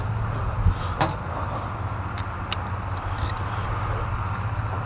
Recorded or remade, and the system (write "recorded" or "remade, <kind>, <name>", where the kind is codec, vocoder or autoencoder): recorded